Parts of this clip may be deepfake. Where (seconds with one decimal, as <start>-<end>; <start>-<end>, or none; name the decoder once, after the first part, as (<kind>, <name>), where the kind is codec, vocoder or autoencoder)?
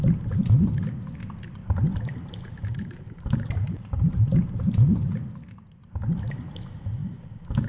1.6-6.2 (vocoder, BigVGAN v2)